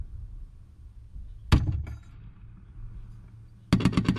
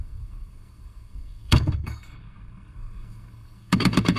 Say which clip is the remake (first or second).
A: second